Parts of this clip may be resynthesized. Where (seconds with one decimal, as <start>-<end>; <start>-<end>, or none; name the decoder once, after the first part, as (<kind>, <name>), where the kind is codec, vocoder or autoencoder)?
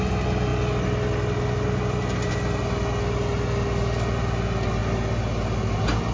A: none